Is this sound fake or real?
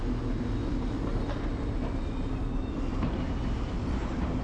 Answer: real